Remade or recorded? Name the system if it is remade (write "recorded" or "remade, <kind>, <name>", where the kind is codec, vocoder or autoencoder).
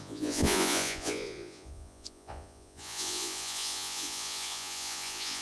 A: remade, vocoder, Vocos